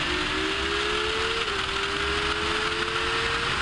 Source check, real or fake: real